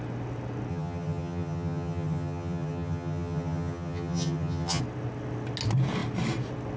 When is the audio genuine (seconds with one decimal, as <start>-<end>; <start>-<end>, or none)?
0.0-0.7; 4.8-6.8